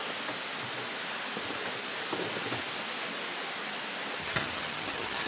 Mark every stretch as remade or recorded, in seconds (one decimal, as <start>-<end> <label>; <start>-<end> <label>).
0.0-4.2 recorded; 4.2-5.3 remade